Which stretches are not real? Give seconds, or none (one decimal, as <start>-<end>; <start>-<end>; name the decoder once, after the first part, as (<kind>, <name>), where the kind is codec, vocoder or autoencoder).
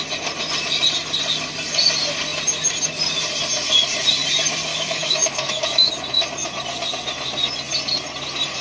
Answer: 4.7-5.9 (autoencoder, DAC-VAE)